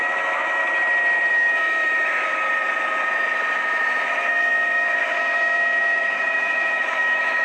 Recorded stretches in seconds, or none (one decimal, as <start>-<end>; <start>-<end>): 0.6-1.3; 2.3-4.3